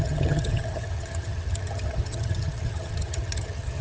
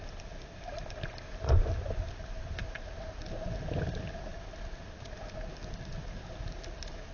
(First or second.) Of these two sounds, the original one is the second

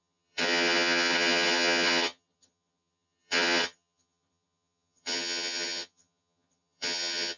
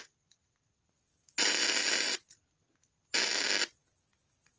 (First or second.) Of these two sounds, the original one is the second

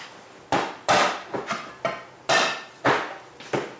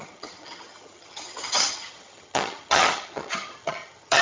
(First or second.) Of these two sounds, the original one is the first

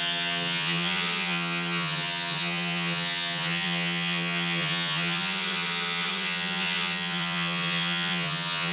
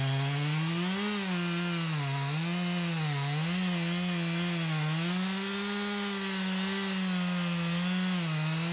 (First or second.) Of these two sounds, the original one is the second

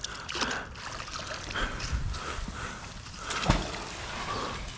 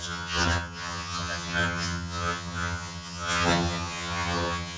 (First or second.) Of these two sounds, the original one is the first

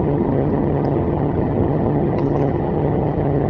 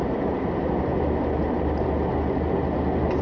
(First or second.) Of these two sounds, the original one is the second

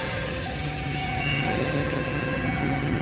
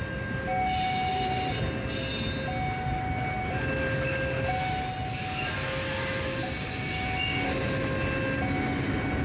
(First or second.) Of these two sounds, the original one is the second